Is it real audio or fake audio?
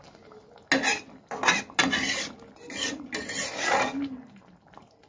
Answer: real